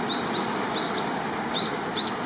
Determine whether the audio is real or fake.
real